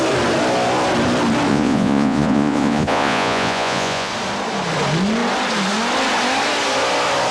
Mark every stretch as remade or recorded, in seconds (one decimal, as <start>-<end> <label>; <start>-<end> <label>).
0.0-1.5 recorded; 1.5-4.1 remade; 4.1-7.3 recorded